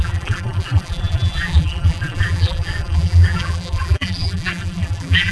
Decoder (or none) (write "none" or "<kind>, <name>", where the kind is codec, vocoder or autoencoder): vocoder, BigVGAN v2